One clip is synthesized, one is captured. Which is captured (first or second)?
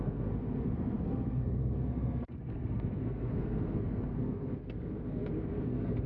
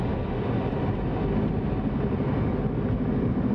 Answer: second